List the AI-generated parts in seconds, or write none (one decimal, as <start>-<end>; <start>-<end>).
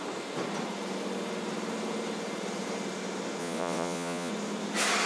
3.4-4.3